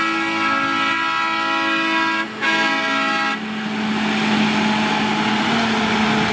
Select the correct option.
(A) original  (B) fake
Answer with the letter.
A